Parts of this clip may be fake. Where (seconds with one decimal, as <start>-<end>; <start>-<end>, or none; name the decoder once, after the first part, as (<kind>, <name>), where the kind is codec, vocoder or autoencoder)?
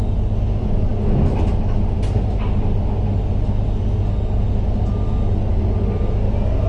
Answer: none